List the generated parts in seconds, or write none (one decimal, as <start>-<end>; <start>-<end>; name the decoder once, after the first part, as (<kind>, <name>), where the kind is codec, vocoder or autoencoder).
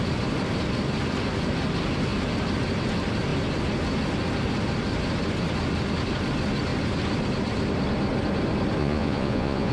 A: 8.8-9.7 (vocoder, Vocos)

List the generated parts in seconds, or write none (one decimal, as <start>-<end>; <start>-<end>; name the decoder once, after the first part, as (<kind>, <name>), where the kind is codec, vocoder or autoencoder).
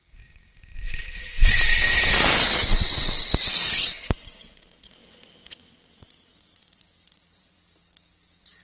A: 0.0-1.7 (vocoder, WaveNeXt); 2.4-8.6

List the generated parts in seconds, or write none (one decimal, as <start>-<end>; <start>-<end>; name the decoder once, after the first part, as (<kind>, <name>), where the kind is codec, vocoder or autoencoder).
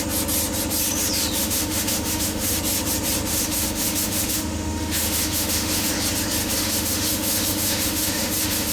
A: 1.4-2.6 (autoencoder, DAC-VAE); 3.3-5.9; 6.4-8.7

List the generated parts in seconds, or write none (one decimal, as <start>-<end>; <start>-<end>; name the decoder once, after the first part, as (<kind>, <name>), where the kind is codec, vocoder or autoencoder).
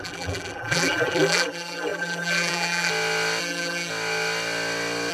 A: 0.0-2.9 (vocoder, BigVGAN v2); 3.4-3.9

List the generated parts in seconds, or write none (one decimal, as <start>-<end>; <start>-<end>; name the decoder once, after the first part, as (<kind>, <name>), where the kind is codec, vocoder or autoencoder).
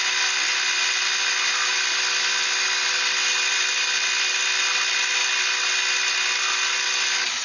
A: none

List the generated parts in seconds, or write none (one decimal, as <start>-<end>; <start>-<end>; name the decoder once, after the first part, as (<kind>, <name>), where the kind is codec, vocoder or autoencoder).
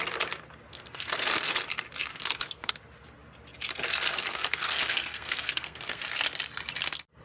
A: 0.7-1.5 (codec, SNAC); 2.1-2.7; 4.3-6.0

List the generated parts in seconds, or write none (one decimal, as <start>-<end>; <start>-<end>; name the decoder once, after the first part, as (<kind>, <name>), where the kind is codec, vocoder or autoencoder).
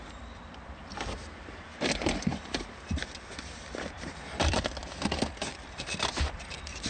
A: 0.0-4.8 (vocoder, BigVGAN v2); 5.3-6.9